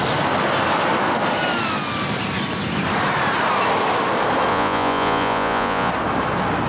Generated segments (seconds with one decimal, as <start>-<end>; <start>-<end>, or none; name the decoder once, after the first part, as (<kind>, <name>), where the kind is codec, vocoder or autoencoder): 4.5-5.9 (vocoder, Vocos)